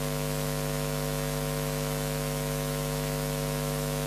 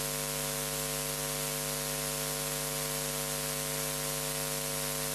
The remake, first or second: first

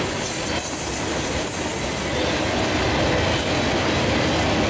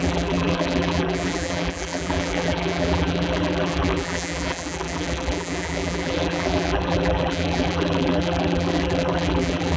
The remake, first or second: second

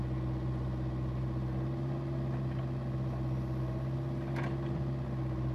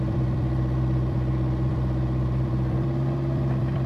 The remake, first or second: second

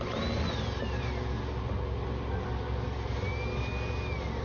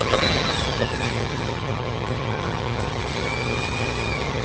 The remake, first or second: second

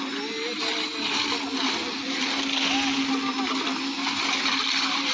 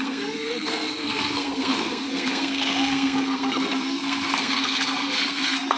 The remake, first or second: second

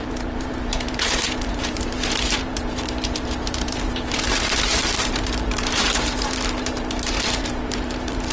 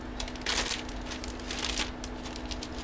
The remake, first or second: first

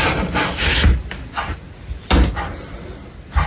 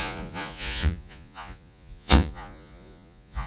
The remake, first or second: second